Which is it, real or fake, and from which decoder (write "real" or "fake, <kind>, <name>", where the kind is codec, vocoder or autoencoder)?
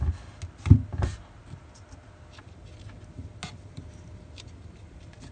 real